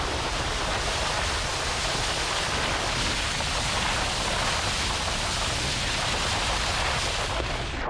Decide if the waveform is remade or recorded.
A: recorded